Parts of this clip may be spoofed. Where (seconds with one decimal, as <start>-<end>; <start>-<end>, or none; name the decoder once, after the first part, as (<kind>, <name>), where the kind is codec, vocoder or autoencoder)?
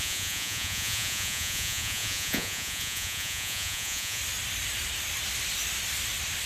0.0-4.2 (vocoder, Vocos)